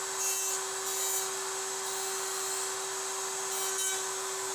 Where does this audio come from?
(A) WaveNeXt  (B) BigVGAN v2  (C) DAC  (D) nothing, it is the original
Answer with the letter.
D